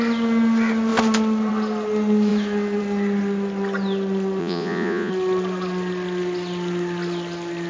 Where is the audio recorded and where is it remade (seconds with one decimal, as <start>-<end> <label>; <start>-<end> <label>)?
0.0-4.4 recorded; 4.4-5.1 remade; 5.1-7.7 recorded

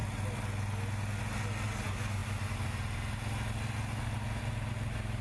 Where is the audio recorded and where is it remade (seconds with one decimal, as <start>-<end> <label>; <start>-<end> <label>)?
0.0-5.2 recorded